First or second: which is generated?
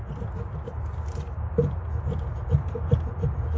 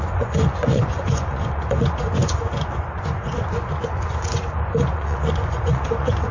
second